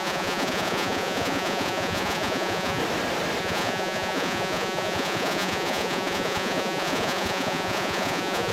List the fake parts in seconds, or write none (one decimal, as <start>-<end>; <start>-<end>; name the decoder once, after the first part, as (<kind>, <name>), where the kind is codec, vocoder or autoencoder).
0.0-2.8 (vocoder, Vocos); 3.4-8.5